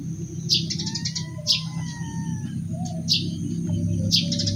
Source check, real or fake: real